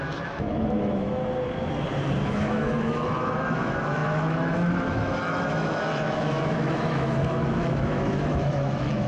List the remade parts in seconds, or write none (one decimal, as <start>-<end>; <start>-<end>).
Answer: 0.0-1.2; 2.2-9.1